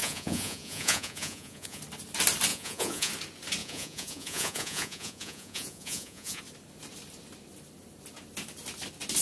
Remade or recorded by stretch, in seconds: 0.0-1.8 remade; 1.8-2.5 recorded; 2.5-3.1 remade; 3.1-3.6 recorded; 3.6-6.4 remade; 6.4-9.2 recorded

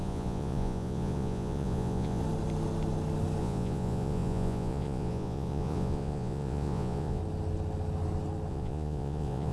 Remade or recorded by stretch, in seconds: 0.0-2.2 remade; 2.2-3.4 recorded; 3.4-7.2 remade; 7.2-8.5 recorded; 8.5-9.5 remade